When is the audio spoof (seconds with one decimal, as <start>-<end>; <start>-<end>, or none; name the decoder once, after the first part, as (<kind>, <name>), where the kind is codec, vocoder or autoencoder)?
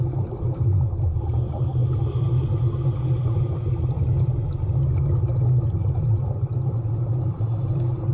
none